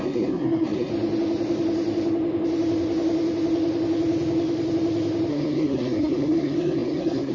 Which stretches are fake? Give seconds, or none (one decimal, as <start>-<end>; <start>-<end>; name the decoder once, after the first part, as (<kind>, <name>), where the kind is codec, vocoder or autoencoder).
0.0-0.9 (codec, SNAC); 5.3-7.3